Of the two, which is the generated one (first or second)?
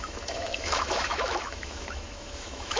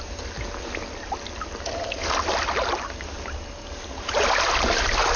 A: first